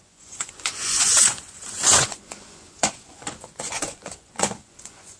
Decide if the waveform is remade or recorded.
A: remade